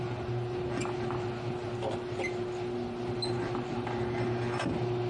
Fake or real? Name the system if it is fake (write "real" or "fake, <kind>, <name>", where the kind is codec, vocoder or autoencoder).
real